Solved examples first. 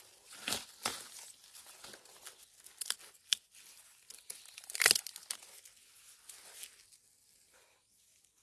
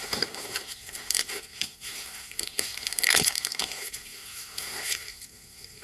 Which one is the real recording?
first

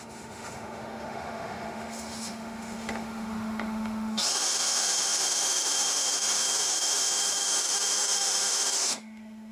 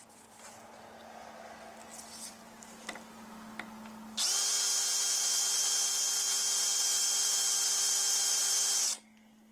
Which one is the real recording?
second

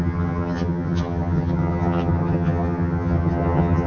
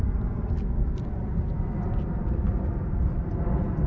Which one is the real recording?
second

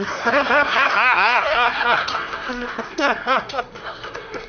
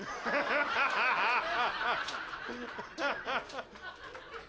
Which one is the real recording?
second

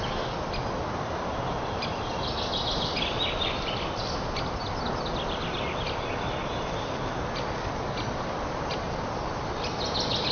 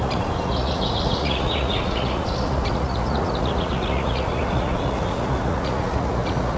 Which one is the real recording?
first